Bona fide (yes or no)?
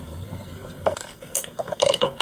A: no